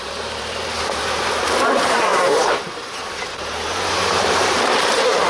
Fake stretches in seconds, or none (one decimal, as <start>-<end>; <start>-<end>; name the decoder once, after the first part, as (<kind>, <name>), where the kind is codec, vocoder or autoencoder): 0.0-5.3 (vocoder, BigVGAN v2)